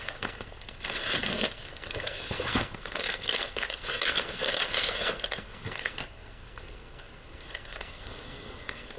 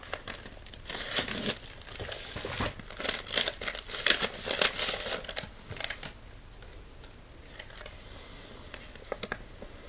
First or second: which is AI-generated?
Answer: first